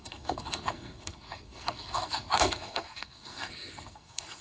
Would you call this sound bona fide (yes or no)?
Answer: no